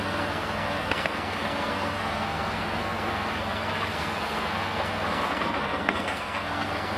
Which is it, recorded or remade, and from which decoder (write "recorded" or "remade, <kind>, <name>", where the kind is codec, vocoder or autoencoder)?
remade, codec, SNAC